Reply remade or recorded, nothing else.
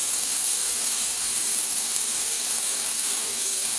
remade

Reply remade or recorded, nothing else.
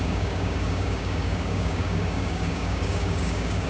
remade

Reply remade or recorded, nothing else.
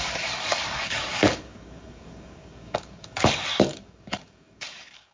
remade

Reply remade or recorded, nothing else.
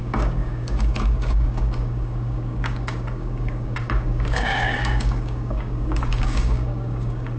remade